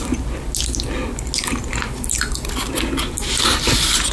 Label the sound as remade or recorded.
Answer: recorded